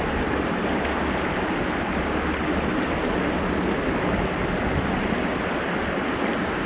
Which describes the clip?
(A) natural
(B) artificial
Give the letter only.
A